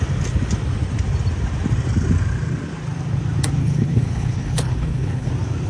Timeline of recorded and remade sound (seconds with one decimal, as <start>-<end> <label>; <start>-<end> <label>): 0.0-3.6 recorded; 3.6-5.3 remade; 5.3-5.7 recorded